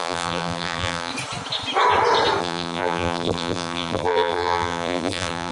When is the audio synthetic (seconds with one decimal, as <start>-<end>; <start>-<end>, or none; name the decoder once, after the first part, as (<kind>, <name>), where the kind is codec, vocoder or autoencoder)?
0.0-1.1 (vocoder, BigVGAN v2); 2.4-5.5